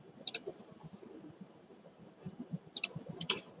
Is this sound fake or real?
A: fake